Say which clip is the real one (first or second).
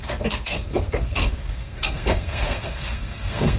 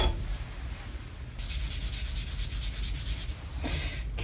second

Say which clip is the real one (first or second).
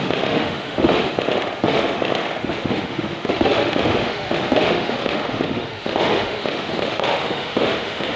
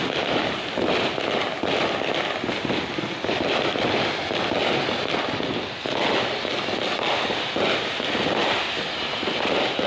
second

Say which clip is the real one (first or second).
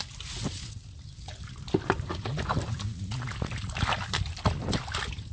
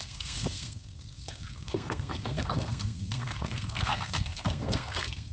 first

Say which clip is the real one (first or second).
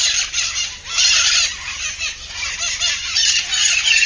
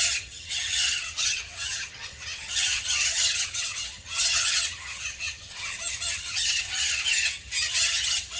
first